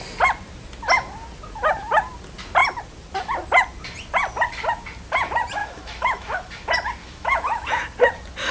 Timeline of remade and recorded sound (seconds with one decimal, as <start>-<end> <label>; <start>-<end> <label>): 0.0-5.6 recorded; 5.6-6.5 remade; 6.5-7.0 recorded; 7.0-7.7 remade; 7.7-8.5 recorded